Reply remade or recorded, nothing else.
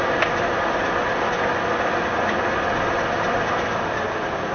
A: recorded